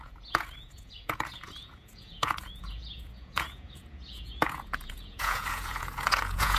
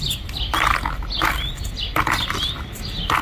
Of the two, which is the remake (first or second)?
first